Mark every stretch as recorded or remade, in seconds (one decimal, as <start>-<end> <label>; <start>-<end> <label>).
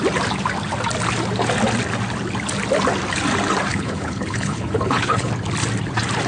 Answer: 0.0-3.7 recorded; 3.7-5.3 remade; 5.3-6.3 recorded